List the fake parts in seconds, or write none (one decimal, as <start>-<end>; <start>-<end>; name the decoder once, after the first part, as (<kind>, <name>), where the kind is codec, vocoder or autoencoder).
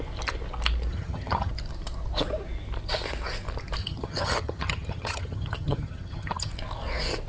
0.9-1.5 (vocoder, HiFi-GAN); 3.8-6.5